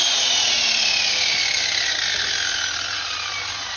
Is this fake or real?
real